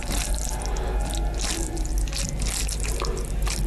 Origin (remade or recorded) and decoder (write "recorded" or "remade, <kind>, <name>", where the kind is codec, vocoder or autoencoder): recorded